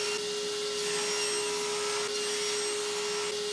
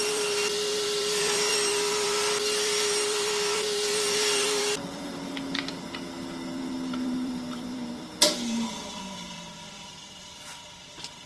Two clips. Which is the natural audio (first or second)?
first